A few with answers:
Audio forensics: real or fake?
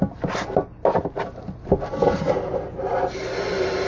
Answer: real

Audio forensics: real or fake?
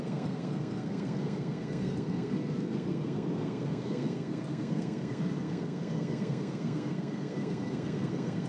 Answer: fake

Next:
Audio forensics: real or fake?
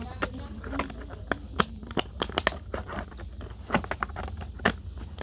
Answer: real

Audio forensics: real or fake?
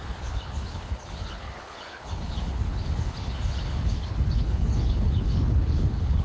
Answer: fake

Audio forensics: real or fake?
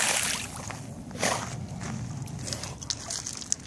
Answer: real